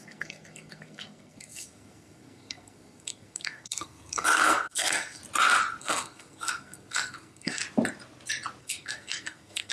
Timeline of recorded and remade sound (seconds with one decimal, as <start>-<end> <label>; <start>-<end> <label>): 0.0-5.2 remade; 5.2-5.8 recorded; 5.8-7.6 remade; 7.6-8.6 recorded; 8.6-9.7 remade